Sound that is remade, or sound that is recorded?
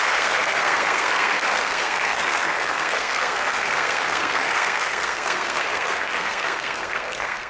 remade